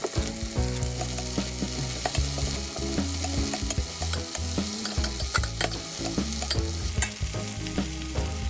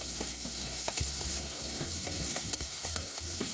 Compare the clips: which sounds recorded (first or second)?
first